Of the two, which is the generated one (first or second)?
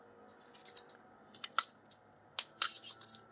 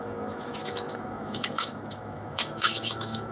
second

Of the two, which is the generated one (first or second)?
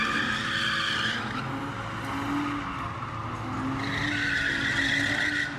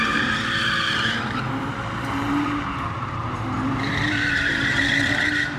second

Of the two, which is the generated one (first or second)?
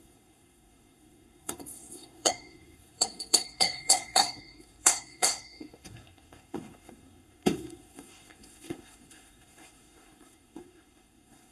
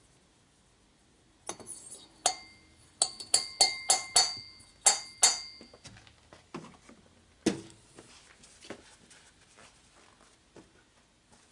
first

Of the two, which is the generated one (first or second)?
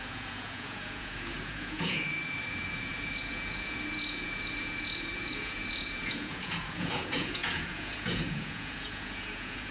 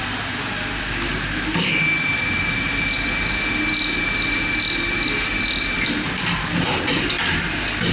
first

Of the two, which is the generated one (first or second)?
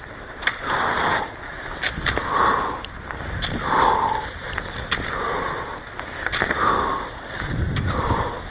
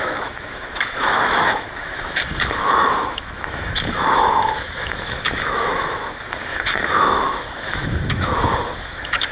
second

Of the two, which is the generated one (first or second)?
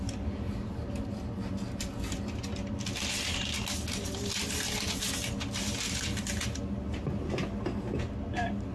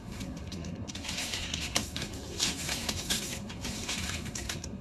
second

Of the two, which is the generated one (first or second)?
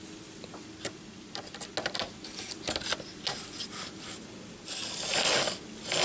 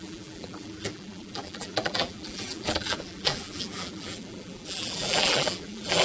second